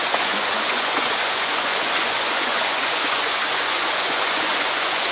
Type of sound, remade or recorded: remade